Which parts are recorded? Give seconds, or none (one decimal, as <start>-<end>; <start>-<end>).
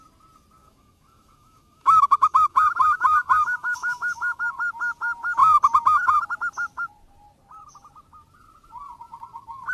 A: 0.0-0.6; 4.4-9.7